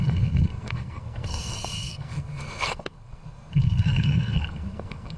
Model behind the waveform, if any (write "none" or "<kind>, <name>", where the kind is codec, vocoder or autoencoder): codec, SNAC